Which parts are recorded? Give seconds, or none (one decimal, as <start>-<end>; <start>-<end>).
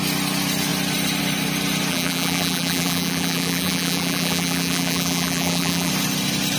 0.0-1.9; 5.9-6.6